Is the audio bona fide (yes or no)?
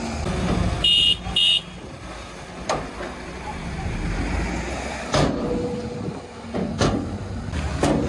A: yes